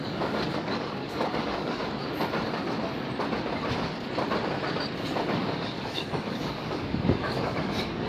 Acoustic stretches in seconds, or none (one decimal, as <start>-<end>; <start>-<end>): 1.8-5.4